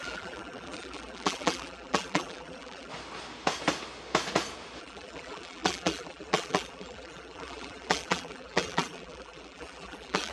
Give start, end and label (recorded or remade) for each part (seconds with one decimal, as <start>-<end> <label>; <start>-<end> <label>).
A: 0.0-2.9 remade; 2.9-4.8 recorded; 4.8-10.3 remade